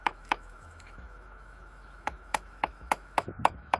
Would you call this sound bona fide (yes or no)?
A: no